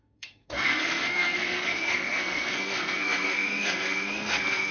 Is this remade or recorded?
remade